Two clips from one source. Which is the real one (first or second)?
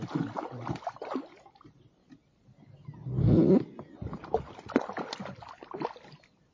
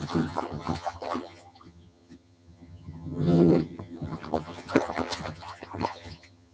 first